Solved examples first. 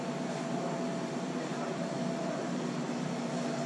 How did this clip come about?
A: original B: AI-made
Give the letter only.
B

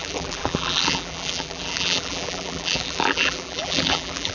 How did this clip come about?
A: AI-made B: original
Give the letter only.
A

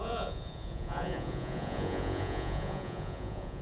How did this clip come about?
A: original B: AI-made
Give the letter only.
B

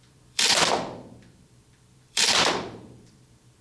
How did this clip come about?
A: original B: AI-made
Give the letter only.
B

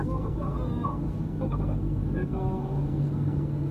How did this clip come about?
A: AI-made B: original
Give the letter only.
A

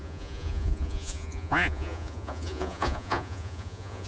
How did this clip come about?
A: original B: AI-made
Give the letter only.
B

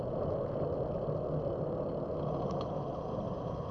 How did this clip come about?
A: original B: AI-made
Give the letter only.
A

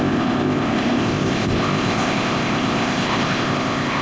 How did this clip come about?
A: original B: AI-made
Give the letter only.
B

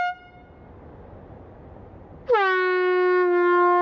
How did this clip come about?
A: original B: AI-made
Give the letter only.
A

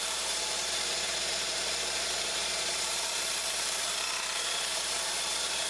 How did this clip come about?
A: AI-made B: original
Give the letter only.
A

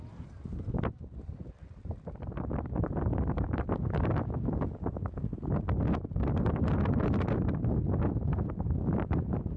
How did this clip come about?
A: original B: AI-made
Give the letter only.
A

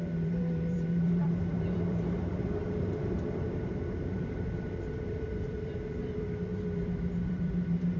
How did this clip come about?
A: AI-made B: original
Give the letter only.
A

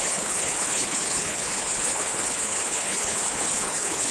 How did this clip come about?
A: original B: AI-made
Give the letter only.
B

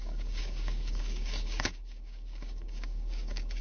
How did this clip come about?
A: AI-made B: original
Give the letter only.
A